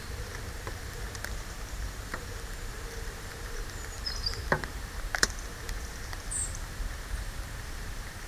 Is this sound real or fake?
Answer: fake